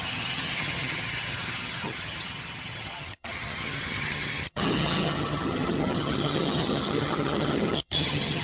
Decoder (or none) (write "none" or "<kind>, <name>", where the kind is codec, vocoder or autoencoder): vocoder, HiFi-GAN